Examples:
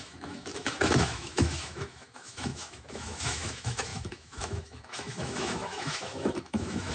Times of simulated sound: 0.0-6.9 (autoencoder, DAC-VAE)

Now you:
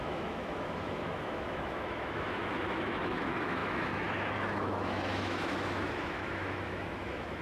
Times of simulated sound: 0.0-7.4 (autoencoder, DAC-VAE)

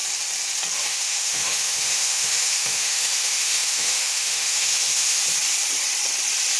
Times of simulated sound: 0.8-5.2 (autoencoder, DAC-VAE)

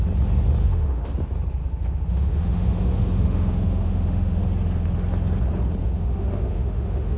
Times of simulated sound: 0.6-1.1 (autoencoder, DAC-VAE); 1.6-4.4; 5.8-7.2